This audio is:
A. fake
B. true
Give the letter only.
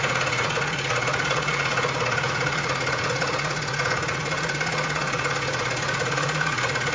A